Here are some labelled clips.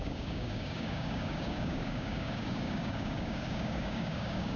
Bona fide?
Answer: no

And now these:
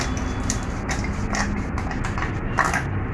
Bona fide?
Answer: yes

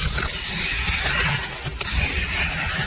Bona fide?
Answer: yes